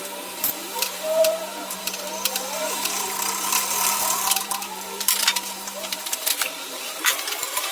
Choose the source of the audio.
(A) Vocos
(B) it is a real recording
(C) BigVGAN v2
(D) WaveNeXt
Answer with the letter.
C